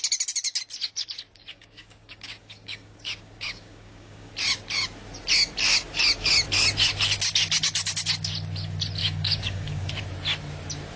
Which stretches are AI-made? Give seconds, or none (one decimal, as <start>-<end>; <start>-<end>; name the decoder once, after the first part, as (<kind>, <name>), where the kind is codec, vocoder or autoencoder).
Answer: 1.5-4.3 (codec, DAC); 9.0-10.0